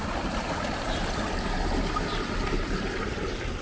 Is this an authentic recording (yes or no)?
yes